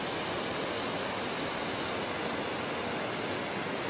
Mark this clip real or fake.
real